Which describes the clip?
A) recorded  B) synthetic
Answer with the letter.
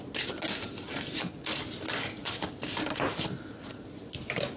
A